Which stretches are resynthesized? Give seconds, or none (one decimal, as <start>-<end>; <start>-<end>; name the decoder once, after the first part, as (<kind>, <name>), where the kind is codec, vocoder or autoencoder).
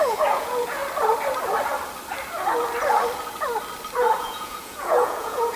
0.0-0.8 (vocoder, Vocos); 4.2-5.6